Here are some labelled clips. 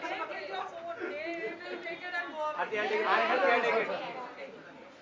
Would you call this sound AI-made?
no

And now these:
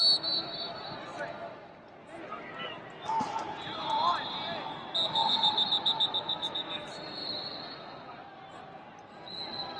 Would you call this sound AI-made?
no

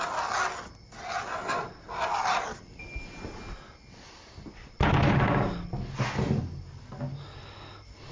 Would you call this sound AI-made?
no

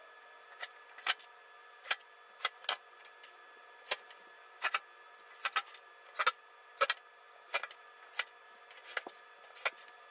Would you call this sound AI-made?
no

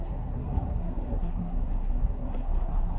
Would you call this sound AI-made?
yes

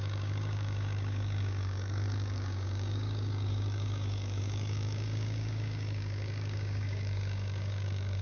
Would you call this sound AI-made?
yes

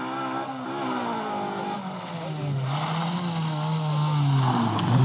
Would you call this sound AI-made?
no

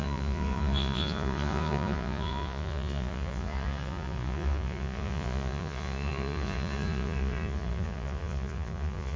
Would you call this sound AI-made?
yes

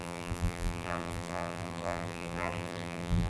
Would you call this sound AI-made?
yes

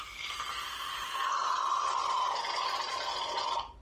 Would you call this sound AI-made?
no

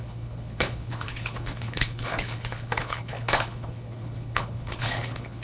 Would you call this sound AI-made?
yes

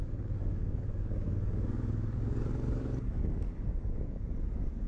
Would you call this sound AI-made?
yes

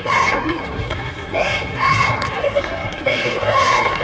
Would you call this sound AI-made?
yes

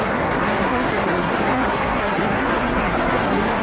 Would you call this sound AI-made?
yes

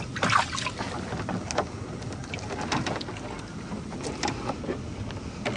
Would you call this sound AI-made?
no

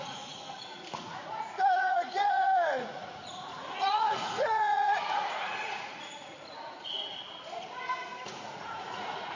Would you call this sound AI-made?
yes